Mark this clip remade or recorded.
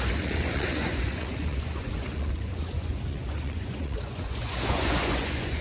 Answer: remade